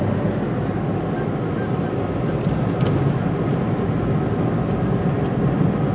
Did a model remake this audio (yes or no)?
no